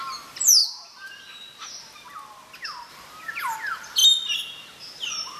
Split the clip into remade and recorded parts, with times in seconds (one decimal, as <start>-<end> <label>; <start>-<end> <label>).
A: 0.0-0.6 remade; 0.6-2.9 recorded; 2.9-4.0 remade; 4.0-5.4 recorded